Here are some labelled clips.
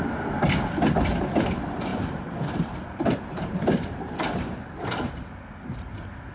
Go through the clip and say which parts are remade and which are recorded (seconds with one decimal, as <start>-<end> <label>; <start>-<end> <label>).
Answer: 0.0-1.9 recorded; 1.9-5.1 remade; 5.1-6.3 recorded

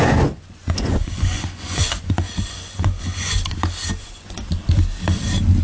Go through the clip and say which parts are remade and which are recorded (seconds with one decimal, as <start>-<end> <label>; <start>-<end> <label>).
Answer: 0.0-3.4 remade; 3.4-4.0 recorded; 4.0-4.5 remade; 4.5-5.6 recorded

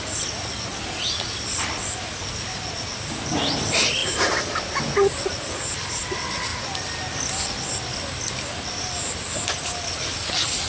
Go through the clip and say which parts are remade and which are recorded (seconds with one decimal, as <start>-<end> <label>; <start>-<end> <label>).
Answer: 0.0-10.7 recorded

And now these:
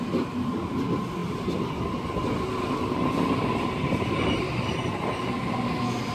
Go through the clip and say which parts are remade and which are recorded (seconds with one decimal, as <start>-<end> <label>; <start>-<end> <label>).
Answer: 0.0-6.1 recorded

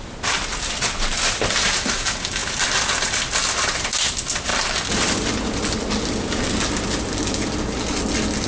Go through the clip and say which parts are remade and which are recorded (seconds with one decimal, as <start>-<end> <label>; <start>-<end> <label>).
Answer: 0.0-8.5 recorded

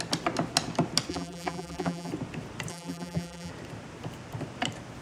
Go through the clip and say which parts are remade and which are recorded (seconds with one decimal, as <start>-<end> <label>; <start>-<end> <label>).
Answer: 0.0-1.1 recorded; 1.1-2.1 remade; 2.1-2.7 recorded; 2.7-3.5 remade; 3.5-5.0 recorded